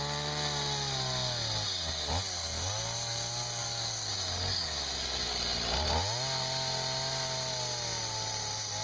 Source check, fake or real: real